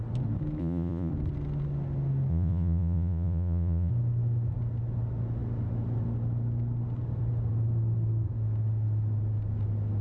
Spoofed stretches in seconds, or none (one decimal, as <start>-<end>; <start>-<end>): 0.6-1.1; 2.3-3.9